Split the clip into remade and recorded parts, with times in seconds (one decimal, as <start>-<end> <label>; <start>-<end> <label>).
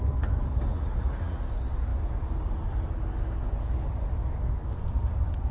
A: 0.0-0.7 recorded; 0.7-1.4 remade; 1.4-5.5 recorded